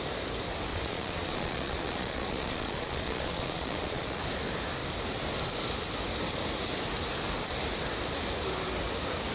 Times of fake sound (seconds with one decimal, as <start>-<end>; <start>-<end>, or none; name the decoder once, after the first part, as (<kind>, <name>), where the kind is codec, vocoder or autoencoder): 0.7-4.2 (vocoder, Vocos)